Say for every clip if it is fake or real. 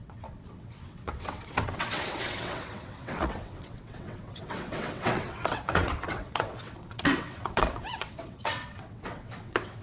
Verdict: fake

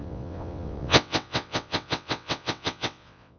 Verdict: fake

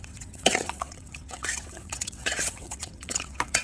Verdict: fake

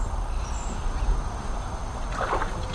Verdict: real